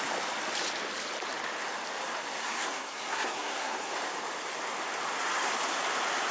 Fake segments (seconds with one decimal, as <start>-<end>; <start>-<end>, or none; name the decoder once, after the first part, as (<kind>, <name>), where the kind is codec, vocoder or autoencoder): 2.4-3.9 (codec, SNAC)